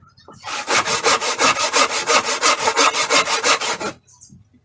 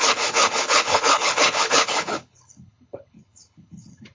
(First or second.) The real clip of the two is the first